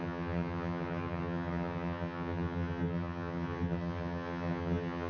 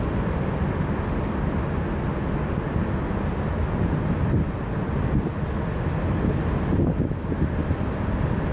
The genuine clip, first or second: second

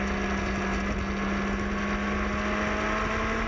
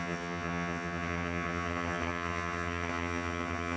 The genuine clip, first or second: first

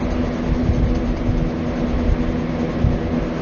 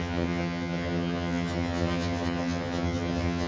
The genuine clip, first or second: first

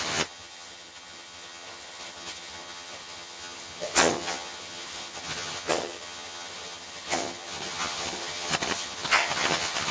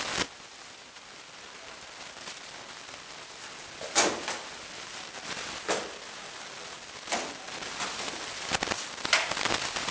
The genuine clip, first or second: second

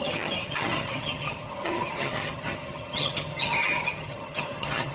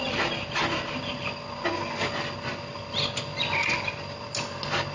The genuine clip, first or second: second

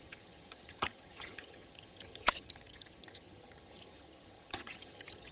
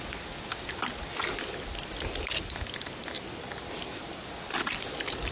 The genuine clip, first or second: second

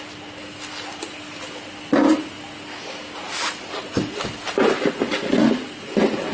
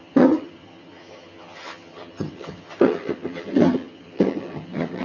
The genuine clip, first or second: first